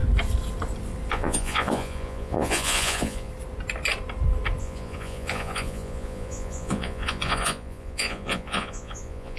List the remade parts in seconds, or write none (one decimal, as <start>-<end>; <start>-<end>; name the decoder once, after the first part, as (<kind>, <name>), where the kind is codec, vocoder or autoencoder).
1.1-3.3 (vocoder, Vocos); 4.6-9.4